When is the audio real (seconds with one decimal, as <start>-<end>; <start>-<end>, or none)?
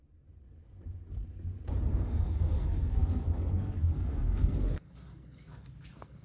0.0-1.9